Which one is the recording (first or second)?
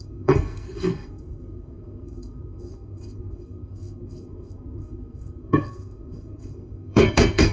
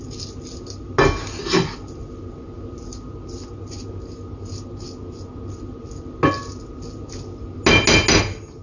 second